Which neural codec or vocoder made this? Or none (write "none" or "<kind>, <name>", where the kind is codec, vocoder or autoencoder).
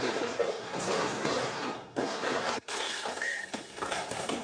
codec, SNAC